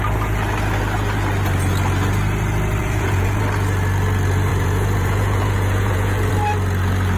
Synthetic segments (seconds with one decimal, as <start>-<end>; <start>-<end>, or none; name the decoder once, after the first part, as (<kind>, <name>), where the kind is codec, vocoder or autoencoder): 2.8-3.4 (vocoder, Vocos); 4.5-6.3